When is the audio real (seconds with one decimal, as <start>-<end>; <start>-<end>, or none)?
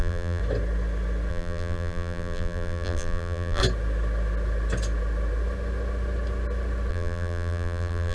0.4-1.3; 3.6-6.9